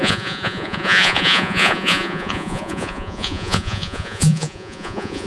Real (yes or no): no